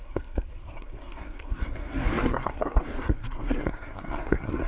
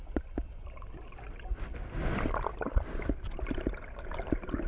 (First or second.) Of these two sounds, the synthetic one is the first